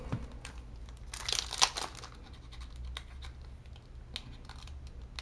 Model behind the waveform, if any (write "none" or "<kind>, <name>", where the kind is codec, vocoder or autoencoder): none